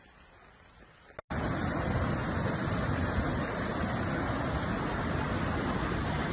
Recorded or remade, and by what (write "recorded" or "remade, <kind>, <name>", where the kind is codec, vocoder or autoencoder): recorded